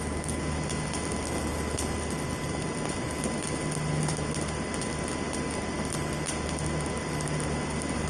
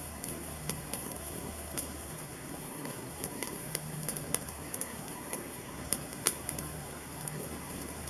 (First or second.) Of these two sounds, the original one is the first